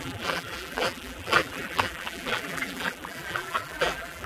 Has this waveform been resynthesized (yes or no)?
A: yes